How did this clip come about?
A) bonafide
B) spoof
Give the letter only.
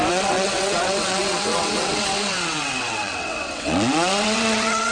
B